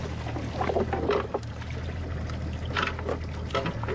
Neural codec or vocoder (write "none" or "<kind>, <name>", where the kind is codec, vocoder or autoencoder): none